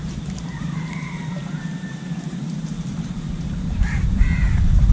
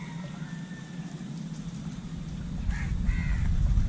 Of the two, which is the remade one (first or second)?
first